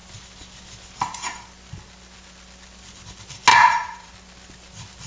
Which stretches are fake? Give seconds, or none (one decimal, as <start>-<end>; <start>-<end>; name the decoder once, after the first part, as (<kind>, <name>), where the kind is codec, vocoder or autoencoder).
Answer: 3.5-4.1 (vocoder, Vocos)